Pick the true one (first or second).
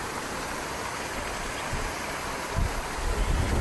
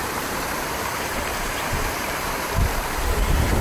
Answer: first